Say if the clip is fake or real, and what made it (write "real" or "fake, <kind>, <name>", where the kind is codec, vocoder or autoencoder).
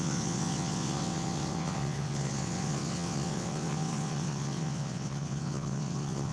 fake, vocoder, WaveNeXt